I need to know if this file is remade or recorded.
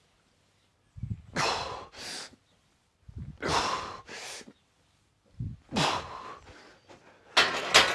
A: recorded